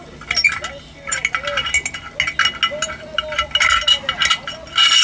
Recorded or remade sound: recorded